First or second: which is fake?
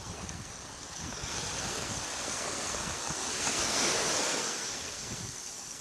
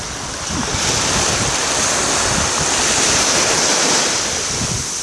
first